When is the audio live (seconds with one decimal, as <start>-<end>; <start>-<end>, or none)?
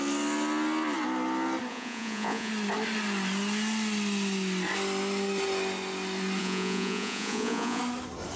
0.0-1.7; 2.5-6.4; 7.8-8.4